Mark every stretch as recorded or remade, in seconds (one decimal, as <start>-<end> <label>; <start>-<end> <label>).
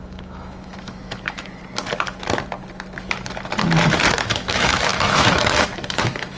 0.0-1.6 remade; 1.6-4.2 recorded; 4.2-6.4 remade